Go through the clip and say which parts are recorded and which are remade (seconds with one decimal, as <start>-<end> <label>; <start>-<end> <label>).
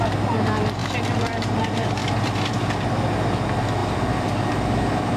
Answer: 0.0-0.8 recorded; 0.8-1.6 remade; 1.6-2.0 recorded; 2.0-2.5 remade; 2.5-3.8 recorded; 3.8-4.5 remade; 4.5-5.2 recorded